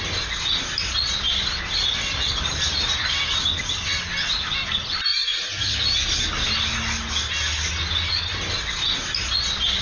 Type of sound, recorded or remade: recorded